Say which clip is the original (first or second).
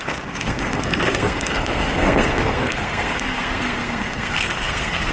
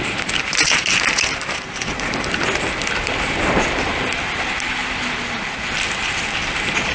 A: second